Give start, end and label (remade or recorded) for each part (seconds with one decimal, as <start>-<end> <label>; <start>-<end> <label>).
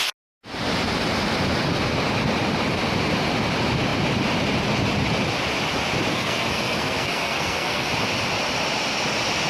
0.0-6.1 recorded; 6.1-7.9 remade; 7.9-9.5 recorded